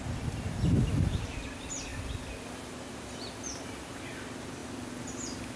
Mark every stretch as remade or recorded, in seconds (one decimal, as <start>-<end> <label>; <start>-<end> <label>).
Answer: 0.0-5.6 recorded